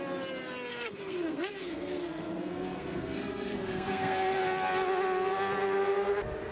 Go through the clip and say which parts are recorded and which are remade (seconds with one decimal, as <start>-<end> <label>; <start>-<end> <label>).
0.0-0.7 recorded; 0.7-4.4 remade; 4.4-6.5 recorded